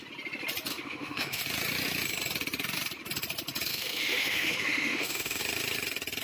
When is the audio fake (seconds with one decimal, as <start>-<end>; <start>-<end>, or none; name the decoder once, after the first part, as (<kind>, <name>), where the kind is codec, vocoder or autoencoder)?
0.7-1.4 (autoencoder, DAC-VAE); 3.7-5.4